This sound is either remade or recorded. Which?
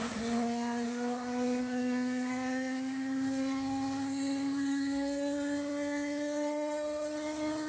remade